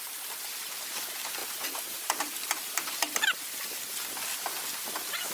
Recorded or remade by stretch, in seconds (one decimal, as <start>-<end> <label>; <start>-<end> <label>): 0.0-5.3 recorded